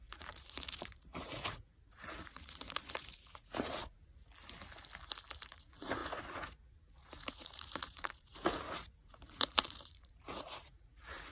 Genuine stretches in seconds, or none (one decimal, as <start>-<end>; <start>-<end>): 4.3-5.5